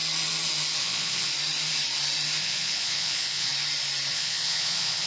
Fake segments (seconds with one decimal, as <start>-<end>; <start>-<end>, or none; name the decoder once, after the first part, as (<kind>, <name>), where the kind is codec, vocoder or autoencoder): 0.8-1.3 (vocoder, Vocos); 2.4-3.5; 4.1-5.1